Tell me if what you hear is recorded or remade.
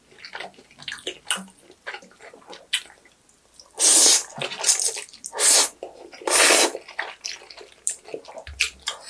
recorded